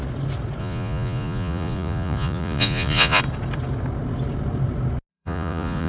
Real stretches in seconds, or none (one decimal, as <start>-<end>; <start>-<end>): 0.0-0.6; 3.2-5.1